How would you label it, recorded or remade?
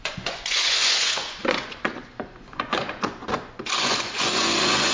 remade